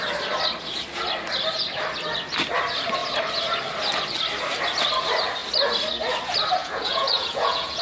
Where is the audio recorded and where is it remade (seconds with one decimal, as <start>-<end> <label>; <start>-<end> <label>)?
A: 0.0-6.6 recorded; 6.6-7.8 remade